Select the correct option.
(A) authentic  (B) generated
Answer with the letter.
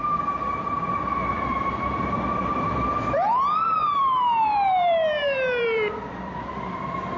B